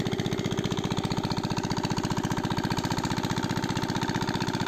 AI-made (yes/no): no